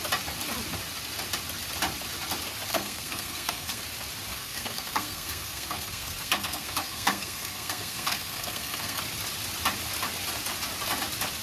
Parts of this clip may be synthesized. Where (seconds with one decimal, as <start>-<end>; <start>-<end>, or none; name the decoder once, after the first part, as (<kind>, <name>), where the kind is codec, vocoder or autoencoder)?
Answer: 2.7-3.8 (codec, SNAC); 4.3-9.0